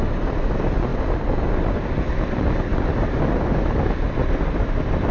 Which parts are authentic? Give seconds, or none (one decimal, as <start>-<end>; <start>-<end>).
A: 0.0-5.1